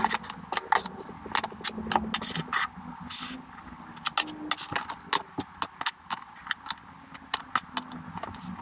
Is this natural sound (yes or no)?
yes